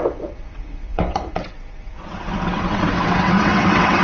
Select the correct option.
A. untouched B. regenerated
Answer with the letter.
B